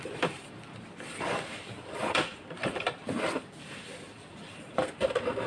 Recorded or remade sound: remade